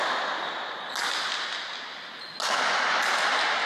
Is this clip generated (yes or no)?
no